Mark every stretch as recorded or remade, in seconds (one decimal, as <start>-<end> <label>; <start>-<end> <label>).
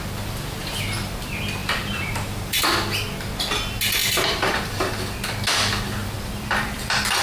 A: 0.0-1.6 recorded; 1.6-2.6 remade; 2.6-4.0 recorded; 4.0-5.0 remade; 5.0-6.0 recorded; 6.0-6.7 remade; 6.7-7.2 recorded